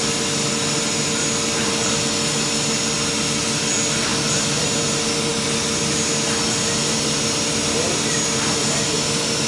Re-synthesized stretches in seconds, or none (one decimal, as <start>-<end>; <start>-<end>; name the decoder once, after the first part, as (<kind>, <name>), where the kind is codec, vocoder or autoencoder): none